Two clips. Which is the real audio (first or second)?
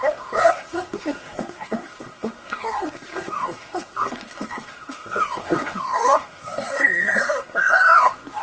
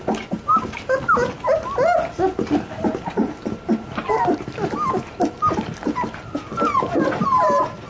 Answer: second